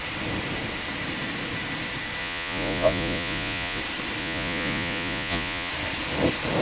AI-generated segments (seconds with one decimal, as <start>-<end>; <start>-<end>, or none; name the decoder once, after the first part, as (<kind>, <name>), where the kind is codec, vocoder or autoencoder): 2.2-3.8 (vocoder, Vocos); 4.2-5.7